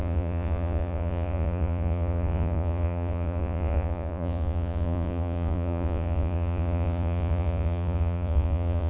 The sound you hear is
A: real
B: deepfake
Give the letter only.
B